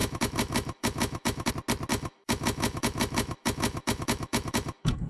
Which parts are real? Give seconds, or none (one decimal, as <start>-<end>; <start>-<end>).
1.5-1.9